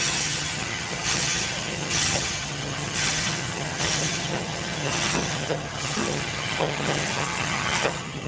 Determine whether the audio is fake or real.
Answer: fake